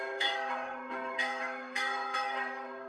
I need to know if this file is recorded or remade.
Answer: remade